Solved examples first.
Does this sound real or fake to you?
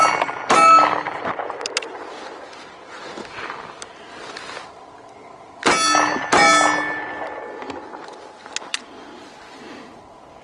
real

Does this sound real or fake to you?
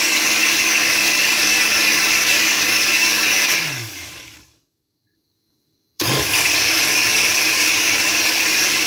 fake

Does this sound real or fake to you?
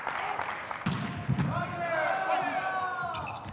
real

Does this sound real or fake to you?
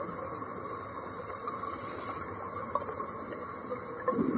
real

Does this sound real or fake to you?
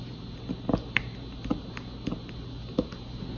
real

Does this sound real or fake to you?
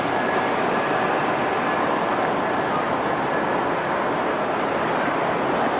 real